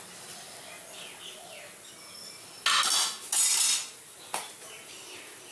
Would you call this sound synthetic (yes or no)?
no